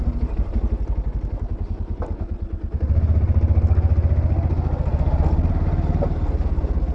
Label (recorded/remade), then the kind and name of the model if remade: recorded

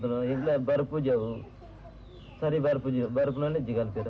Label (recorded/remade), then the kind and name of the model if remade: recorded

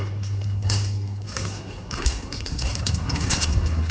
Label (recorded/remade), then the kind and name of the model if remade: remade, codec, SNAC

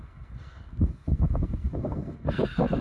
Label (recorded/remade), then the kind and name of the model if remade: remade, codec, SNAC